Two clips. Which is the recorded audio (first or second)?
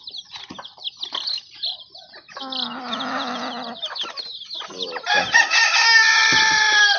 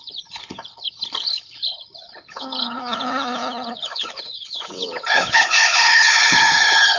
first